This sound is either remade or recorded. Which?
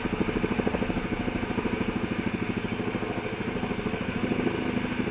recorded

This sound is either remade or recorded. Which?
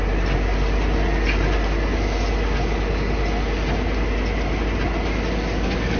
recorded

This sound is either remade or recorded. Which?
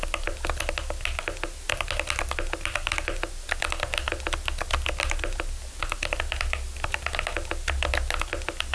recorded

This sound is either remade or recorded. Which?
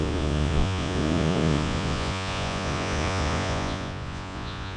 remade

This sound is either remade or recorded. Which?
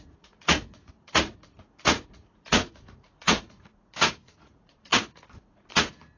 remade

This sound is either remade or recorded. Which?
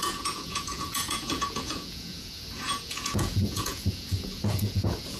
remade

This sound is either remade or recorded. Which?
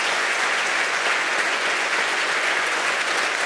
remade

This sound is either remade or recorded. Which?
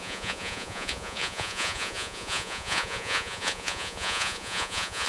remade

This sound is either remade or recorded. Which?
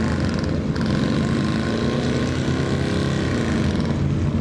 recorded